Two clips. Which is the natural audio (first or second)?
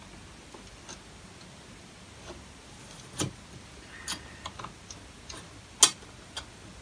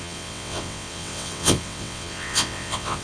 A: first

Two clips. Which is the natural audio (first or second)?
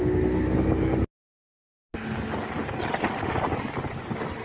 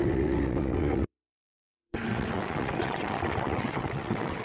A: first